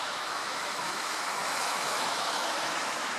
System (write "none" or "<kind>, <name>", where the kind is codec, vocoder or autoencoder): autoencoder, DAC-VAE